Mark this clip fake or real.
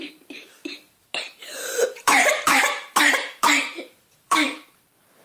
fake